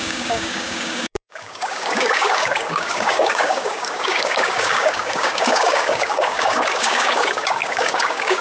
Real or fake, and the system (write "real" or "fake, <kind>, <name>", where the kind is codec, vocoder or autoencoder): fake, codec, DAC